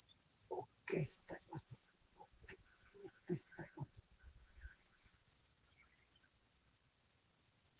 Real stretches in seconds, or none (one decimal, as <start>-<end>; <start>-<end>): 0.0-0.9; 5.3-7.8